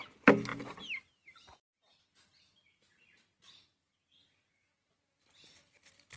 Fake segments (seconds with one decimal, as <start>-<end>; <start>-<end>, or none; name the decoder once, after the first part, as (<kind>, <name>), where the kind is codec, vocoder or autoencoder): none